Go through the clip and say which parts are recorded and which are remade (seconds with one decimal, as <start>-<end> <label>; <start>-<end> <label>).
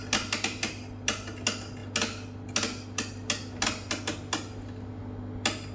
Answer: 0.0-5.7 recorded